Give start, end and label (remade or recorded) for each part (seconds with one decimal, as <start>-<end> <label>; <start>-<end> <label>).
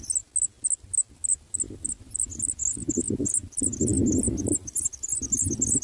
0.0-5.8 recorded